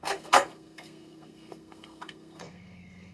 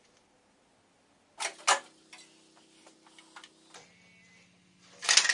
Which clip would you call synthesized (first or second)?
first